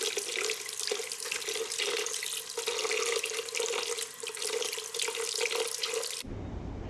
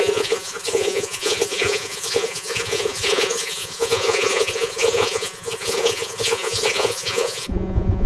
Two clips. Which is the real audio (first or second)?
first